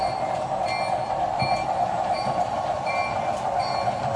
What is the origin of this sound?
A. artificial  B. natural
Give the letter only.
A